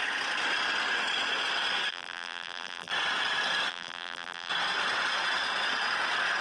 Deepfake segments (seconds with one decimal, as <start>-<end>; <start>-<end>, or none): 1.9-2.9; 3.7-4.5